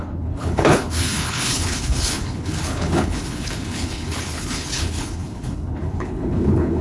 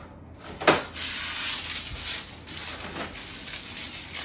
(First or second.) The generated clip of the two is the first